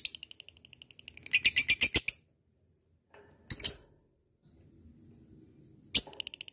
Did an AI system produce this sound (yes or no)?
no